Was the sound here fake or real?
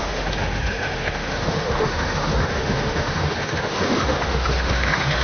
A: fake